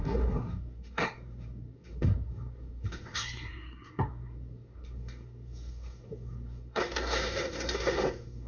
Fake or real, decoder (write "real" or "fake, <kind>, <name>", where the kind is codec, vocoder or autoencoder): fake, codec, SNAC